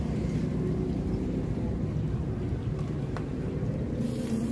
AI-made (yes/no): yes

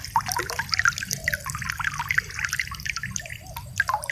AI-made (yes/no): no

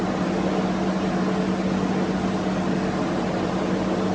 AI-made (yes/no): no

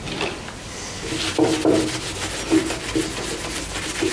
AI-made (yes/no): no